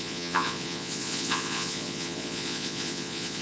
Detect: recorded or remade remade